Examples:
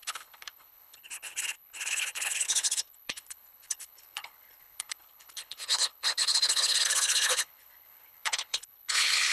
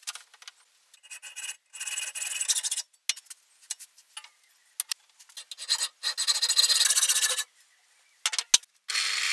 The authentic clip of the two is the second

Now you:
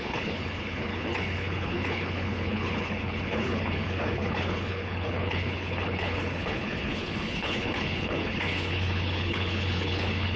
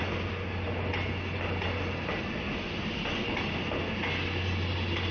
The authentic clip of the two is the second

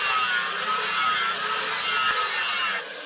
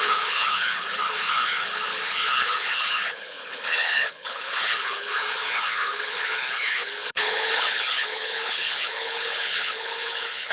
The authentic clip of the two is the first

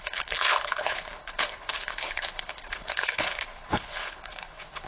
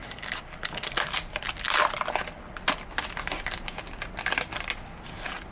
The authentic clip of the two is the second